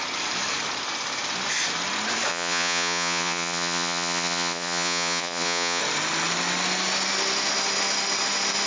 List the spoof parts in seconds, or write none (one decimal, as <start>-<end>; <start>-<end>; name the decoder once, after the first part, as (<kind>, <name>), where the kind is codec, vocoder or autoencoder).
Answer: 2.3-5.8 (vocoder, Vocos)